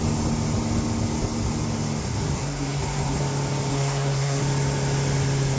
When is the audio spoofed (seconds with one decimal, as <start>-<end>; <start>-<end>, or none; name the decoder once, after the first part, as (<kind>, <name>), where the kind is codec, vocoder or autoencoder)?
2.0-3.2 (codec, SNAC); 3.7-4.4